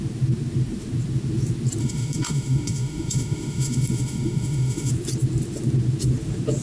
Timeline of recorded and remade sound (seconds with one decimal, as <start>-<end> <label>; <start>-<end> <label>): 0.0-1.8 recorded; 1.8-4.9 remade; 4.9-6.6 recorded